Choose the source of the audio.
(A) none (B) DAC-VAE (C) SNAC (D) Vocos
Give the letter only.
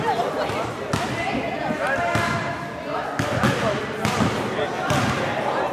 A